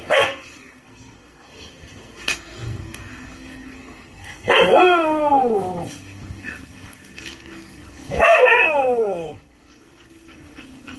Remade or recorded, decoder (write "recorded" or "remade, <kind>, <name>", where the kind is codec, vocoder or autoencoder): remade, codec, SNAC